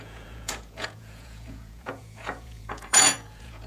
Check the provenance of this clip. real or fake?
fake